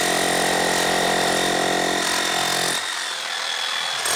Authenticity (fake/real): real